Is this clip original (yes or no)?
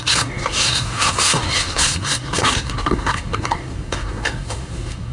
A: no